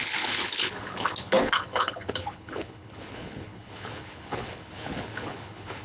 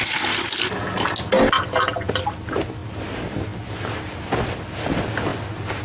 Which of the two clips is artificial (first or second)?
first